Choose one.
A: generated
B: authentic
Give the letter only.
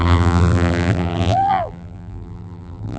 A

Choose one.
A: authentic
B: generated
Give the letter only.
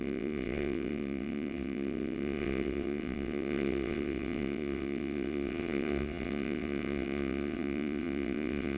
B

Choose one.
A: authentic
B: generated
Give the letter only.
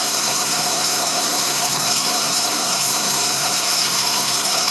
B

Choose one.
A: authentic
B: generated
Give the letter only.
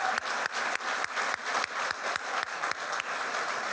A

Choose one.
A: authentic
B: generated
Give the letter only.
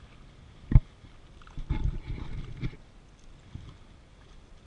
A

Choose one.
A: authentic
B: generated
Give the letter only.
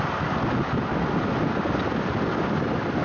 A